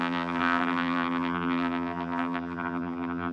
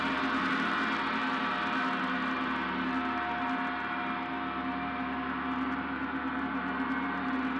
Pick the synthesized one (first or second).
first